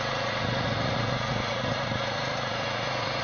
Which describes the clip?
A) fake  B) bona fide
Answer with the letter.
A